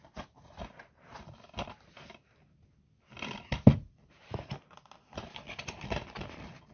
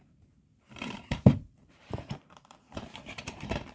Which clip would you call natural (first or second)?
first